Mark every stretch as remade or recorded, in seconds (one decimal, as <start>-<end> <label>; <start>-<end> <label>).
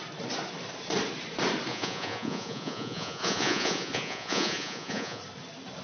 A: 0.0-1.7 recorded; 1.7-5.2 remade; 5.2-5.8 recorded